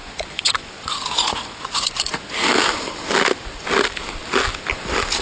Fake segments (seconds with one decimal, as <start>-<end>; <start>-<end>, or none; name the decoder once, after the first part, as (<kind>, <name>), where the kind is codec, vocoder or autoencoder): 0.0-2.3 (vocoder, Vocos)